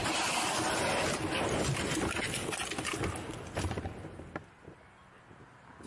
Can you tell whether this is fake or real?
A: real